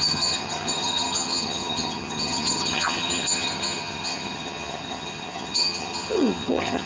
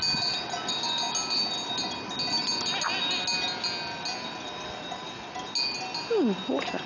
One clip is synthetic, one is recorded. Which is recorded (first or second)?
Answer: second